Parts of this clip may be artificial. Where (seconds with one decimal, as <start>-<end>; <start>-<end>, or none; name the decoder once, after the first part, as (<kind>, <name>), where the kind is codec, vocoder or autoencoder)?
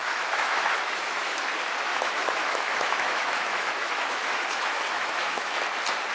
0.0-1.4 (autoencoder, DAC-VAE); 1.9-5.6